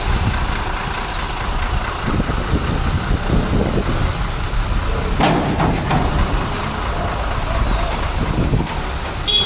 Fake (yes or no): no